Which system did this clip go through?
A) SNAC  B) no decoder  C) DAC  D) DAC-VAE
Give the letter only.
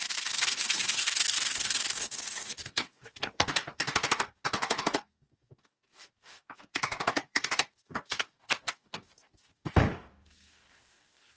C